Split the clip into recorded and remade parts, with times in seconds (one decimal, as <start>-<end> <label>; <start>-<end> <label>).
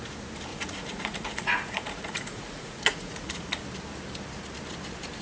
0.0-0.5 recorded; 0.5-3.6 remade; 3.6-5.2 recorded